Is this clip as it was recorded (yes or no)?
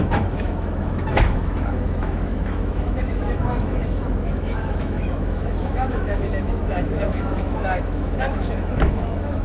no